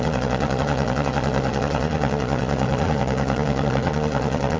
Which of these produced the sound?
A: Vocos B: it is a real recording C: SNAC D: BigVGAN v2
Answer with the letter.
A